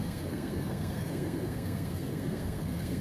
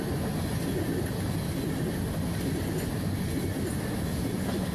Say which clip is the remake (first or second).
first